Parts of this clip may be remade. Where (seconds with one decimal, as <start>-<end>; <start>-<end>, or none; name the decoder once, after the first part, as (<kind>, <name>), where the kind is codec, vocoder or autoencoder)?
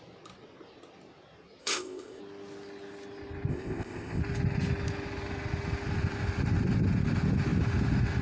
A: 1.6-2.2 (codec, ZipCodec); 3.5-4.2